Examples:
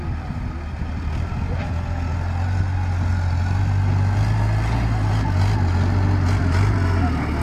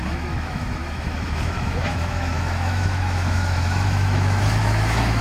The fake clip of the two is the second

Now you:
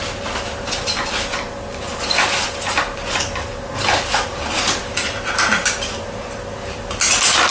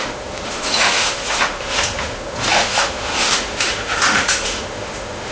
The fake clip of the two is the second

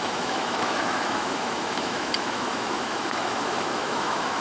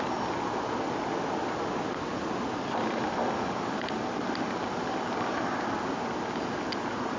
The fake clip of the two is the first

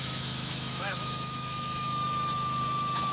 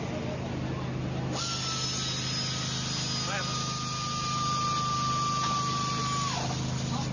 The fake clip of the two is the first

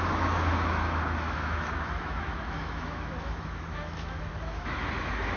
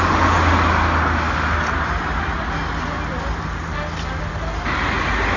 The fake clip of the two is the first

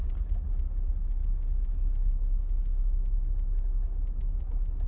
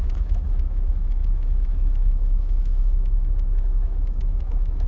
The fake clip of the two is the second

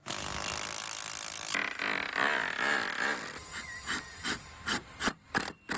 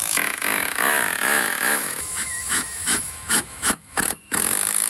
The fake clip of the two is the second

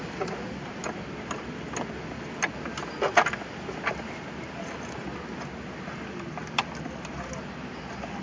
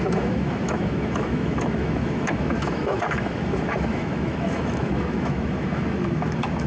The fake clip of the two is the second